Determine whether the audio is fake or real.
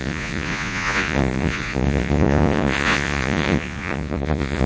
fake